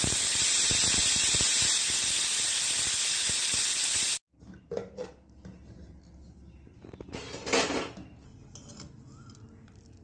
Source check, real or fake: real